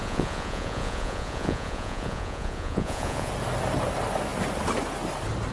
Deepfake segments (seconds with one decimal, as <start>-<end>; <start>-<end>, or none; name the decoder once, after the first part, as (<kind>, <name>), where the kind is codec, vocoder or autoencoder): 0.0-3.3 (vocoder, Vocos)